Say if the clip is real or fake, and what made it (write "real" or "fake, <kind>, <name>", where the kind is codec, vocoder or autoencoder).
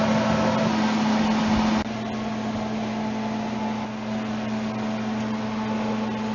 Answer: real